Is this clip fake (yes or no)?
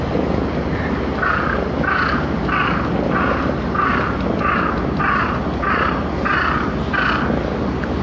no